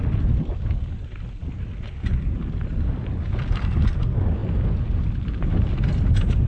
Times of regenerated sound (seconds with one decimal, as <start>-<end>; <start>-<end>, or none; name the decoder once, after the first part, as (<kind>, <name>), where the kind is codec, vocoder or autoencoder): none